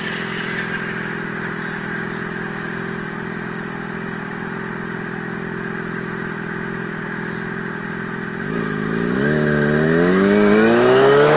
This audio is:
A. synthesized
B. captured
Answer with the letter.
B